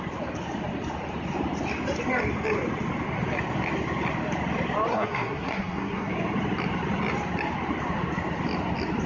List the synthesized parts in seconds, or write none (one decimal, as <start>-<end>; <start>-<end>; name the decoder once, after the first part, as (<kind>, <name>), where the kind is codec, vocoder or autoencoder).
4.9-6.1 (codec, SNAC)